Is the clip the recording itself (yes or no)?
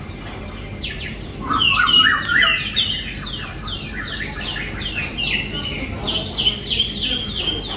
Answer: yes